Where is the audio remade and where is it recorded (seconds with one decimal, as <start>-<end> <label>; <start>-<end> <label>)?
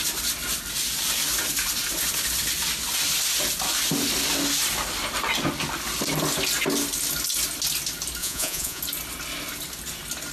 0.0-8.2 recorded; 8.2-8.8 remade; 8.8-10.3 recorded